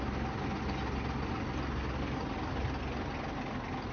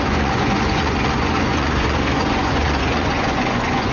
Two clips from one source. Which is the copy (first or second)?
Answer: second